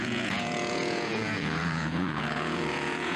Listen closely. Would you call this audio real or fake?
fake